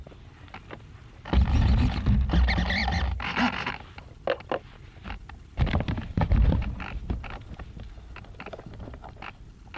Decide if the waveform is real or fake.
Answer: real